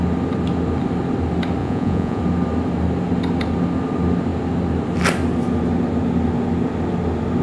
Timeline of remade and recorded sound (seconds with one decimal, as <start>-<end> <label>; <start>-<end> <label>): 0.0-1.6 recorded; 1.6-2.2 remade; 2.2-7.4 recorded